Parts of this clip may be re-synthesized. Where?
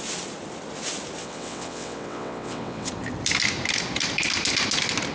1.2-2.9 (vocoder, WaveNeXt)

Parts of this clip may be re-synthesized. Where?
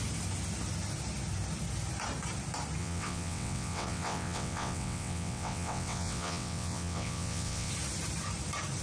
2.8-7.7 (vocoder, WaveNeXt)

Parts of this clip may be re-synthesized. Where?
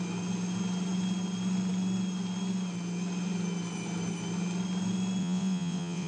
5.2-6.1 (vocoder, WaveNeXt)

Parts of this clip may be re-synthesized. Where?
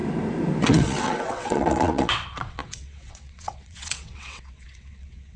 0.6-5.4 (vocoder, WaveNeXt)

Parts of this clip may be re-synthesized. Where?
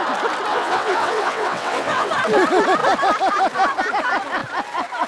0.5-2.1 (vocoder, WaveNeXt)